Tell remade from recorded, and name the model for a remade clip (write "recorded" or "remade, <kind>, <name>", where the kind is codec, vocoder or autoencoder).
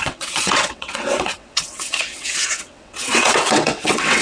remade, vocoder, WaveNeXt